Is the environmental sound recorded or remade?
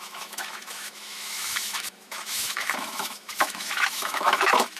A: remade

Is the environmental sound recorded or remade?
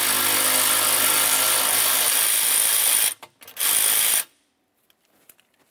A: recorded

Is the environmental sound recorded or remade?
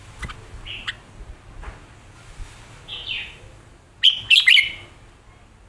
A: recorded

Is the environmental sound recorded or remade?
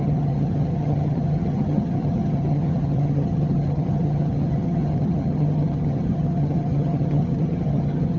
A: remade